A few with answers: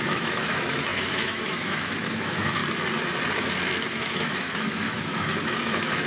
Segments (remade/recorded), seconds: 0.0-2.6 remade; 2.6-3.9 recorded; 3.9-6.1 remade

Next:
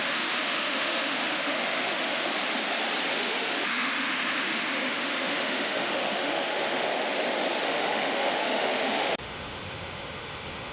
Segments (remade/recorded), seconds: 0.0-2.3 remade; 2.3-3.1 recorded; 3.1-6.9 remade; 6.9-7.5 recorded; 7.5-10.7 remade

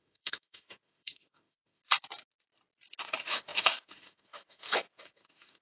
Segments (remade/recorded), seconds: 0.0-1.8 remade; 1.8-3.0 recorded; 3.0-5.6 remade

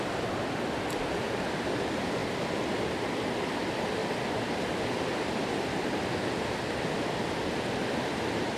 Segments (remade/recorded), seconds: 0.0-8.6 recorded

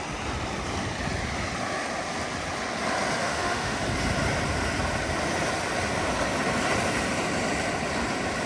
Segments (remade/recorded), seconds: 0.0-3.2 recorded; 3.2-3.8 remade; 3.8-8.5 recorded